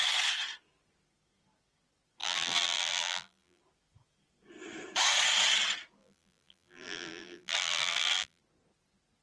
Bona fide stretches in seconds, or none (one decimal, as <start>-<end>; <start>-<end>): 0.0-2.2; 3.6-6.0; 8.4-9.2